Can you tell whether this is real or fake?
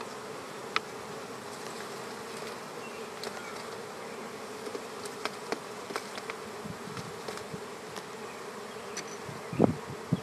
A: real